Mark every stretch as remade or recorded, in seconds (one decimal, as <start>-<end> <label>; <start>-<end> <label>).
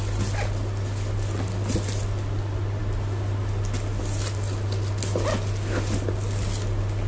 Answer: 0.0-7.1 recorded